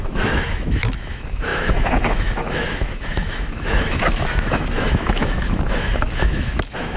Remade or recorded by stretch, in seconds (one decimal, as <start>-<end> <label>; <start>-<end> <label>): 0.0-7.0 remade